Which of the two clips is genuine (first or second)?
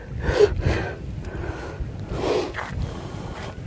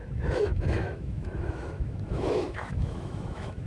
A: first